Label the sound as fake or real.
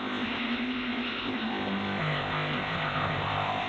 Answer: fake